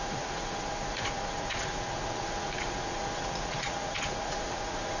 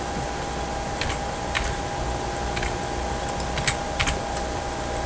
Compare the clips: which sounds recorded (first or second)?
second